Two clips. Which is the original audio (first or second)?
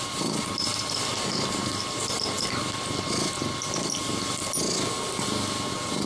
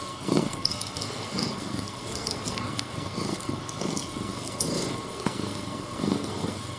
first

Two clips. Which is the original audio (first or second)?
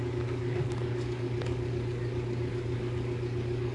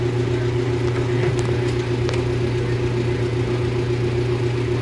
second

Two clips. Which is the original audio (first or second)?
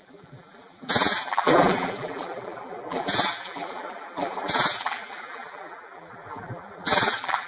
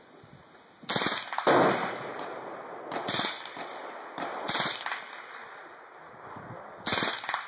second